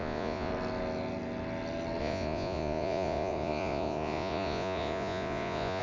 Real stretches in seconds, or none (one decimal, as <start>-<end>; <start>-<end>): 0.5-2.0